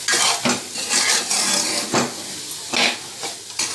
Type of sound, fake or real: real